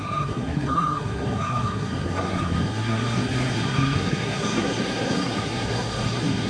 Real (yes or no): no